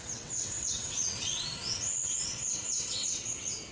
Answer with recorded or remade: remade